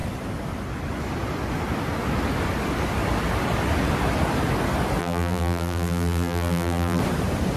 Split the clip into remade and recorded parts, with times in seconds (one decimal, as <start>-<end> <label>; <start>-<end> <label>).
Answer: 0.0-5.0 recorded; 5.0-7.0 remade; 7.0-7.6 recorded